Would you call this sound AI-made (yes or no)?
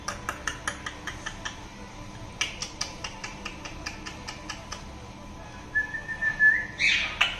no